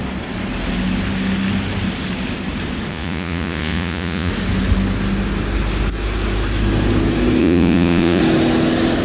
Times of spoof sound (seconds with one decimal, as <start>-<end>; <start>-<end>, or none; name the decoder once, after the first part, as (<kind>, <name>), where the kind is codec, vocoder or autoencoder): 2.9-4.3 (vocoder, Vocos); 7.4-8.2